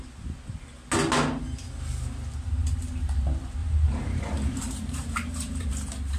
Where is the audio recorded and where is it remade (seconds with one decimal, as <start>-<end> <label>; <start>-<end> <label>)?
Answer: 0.0-3.6 recorded; 3.6-5.7 remade; 5.7-6.2 recorded